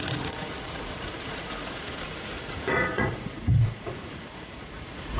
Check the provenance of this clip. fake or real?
fake